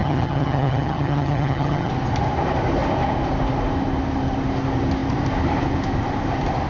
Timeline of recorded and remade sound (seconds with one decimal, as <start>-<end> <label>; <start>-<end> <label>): 0.0-1.9 remade; 1.9-6.7 recorded